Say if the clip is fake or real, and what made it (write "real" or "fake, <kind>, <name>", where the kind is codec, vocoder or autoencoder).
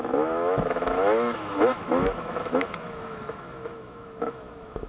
fake, autoencoder, DAC-VAE